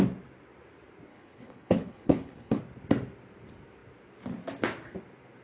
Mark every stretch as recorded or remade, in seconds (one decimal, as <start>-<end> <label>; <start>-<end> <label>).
0.0-1.1 recorded; 1.1-2.6 remade; 2.6-5.4 recorded